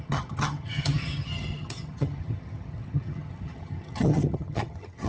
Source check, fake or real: fake